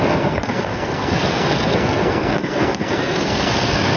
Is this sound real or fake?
fake